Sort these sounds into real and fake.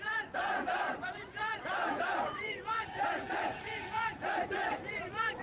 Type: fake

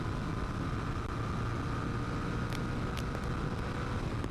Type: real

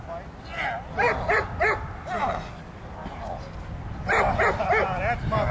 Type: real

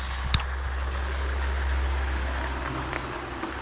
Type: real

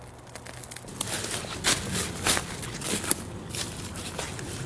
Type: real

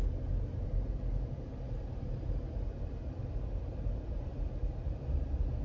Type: real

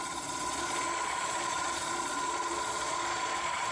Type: fake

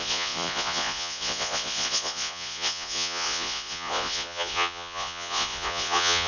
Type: fake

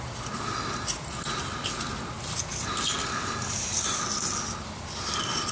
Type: real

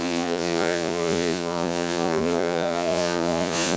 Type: fake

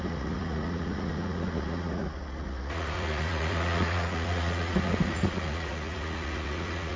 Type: fake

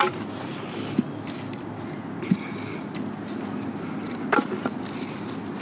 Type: real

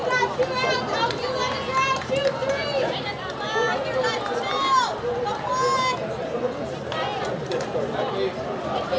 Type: real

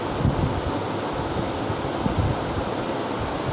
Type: real